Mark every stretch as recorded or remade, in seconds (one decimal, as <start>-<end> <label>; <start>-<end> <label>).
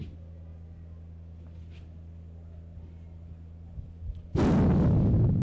0.0-5.4 recorded